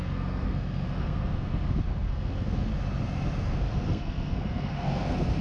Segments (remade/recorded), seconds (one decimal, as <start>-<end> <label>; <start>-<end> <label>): 0.0-2.7 remade; 2.7-3.4 recorded; 3.4-5.4 remade

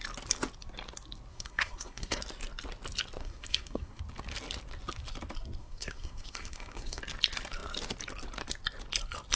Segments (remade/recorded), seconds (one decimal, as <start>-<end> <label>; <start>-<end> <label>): 0.0-1.3 recorded; 1.3-2.2 remade; 2.2-3.2 recorded; 3.2-4.0 remade; 4.0-5.6 recorded; 5.6-7.0 remade; 7.0-9.4 recorded

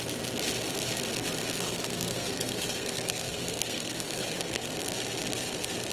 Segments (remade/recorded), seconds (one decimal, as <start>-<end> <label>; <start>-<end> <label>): 0.0-1.4 recorded; 1.4-4.7 remade; 4.7-5.9 recorded

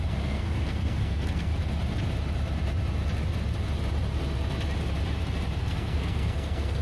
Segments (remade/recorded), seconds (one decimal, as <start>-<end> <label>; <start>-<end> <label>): 0.0-1.5 remade; 1.5-5.6 recorded; 5.6-6.8 remade

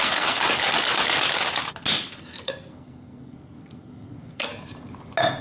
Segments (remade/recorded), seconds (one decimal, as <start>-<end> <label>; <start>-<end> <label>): 0.0-0.4 remade; 0.4-2.1 recorded; 2.1-4.5 remade; 4.5-5.4 recorded